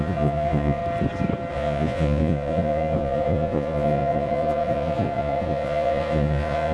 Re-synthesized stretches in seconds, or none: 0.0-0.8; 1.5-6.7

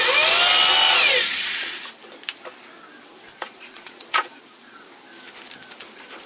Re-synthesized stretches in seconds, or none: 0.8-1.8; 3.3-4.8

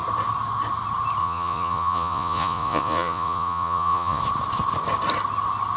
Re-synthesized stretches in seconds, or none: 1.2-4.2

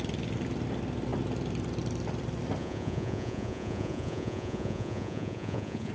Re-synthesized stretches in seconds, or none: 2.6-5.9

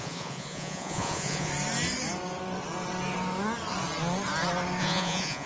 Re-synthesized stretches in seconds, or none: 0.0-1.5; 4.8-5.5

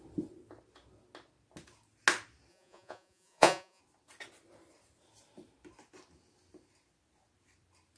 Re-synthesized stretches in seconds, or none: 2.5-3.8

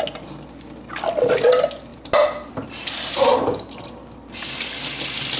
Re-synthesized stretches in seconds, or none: none

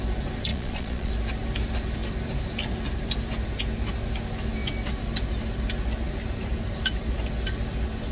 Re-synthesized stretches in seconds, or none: 0.5-1.1